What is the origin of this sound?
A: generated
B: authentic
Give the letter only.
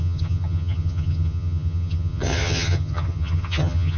A